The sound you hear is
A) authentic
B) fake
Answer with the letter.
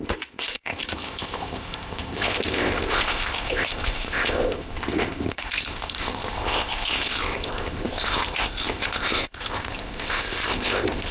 B